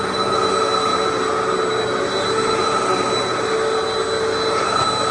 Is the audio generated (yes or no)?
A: no